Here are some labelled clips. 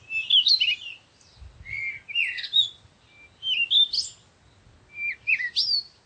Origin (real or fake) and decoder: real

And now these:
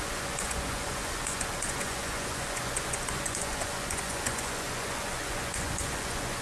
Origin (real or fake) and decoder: fake, vocoder, Vocos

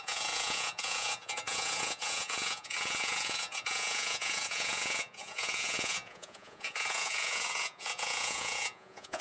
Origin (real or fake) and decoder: fake, vocoder, Vocos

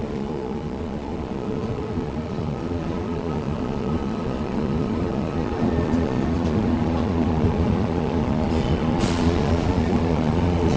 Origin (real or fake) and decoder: fake, vocoder, Vocos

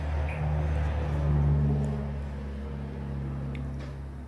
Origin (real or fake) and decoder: real